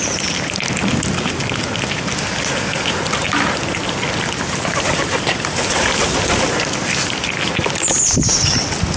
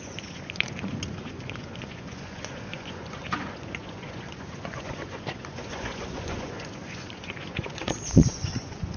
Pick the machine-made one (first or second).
second